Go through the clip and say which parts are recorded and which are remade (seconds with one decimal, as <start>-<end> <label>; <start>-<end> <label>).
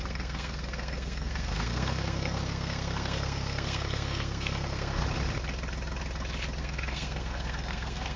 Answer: 0.0-5.0 remade; 5.0-6.6 recorded; 6.6-8.2 remade